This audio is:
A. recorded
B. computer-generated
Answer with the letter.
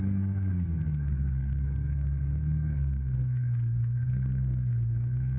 B